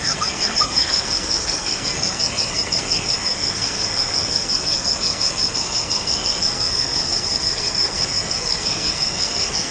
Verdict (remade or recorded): remade